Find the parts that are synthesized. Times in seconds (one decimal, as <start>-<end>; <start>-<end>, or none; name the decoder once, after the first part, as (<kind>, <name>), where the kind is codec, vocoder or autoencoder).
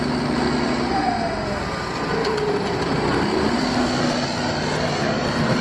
2.2-3.1 (vocoder, BigVGAN v2)